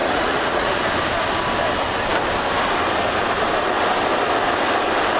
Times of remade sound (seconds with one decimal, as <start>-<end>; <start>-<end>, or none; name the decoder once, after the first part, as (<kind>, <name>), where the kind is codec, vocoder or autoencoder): 0.0-0.8 (vocoder, Vocos)